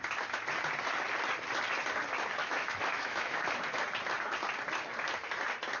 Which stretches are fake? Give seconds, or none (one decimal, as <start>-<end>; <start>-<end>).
2.4-3.5